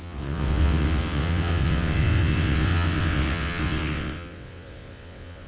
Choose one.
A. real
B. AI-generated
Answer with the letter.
B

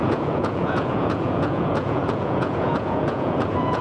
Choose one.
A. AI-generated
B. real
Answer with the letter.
A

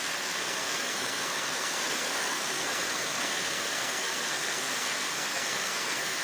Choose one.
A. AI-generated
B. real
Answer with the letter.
A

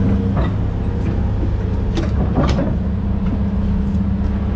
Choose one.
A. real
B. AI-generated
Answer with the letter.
A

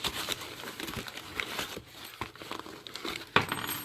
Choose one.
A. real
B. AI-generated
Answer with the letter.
A